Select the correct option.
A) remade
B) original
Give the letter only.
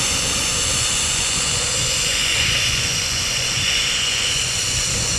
A